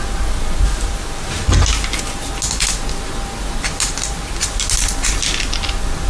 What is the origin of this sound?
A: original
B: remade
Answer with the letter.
A